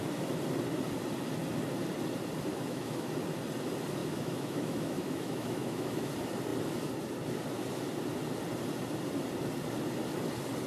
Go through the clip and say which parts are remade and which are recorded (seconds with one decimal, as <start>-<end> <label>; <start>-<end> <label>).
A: 0.0-2.5 recorded; 2.5-3.1 remade; 3.1-4.0 recorded; 4.0-6.1 remade; 6.1-10.7 recorded